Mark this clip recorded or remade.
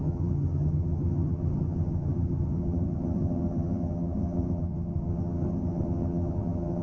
remade